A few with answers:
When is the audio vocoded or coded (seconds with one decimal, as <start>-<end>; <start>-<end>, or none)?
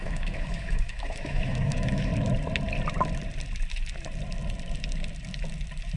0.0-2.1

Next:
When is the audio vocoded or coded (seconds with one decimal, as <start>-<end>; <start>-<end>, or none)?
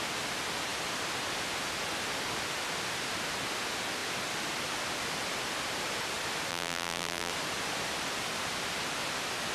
6.5-7.3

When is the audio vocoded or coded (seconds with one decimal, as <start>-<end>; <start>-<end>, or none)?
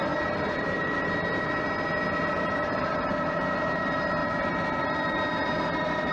0.0-6.1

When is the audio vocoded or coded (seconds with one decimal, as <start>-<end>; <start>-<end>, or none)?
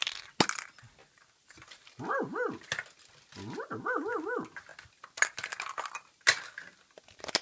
none